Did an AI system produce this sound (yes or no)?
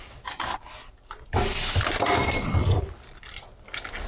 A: yes